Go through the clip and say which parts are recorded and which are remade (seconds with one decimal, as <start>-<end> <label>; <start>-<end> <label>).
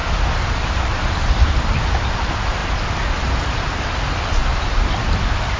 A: 0.0-2.6 remade; 2.6-3.5 recorded; 3.5-5.6 remade